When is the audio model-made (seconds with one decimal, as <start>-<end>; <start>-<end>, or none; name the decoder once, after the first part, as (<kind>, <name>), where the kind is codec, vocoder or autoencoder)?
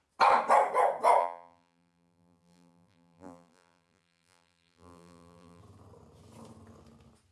1.2-5.6 (vocoder, BigVGAN v2)